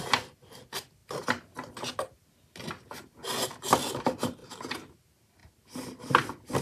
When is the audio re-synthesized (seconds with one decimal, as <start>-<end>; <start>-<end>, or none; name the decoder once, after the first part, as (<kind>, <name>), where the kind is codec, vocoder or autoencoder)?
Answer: none